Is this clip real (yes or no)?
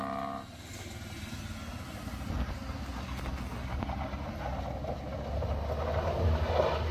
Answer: yes